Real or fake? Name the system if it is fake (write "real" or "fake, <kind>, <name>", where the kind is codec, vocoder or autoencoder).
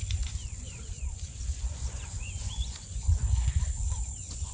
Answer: fake, vocoder, Vocos